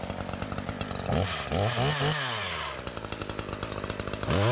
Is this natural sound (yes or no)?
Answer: yes